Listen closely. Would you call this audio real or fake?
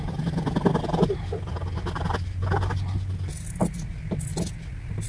real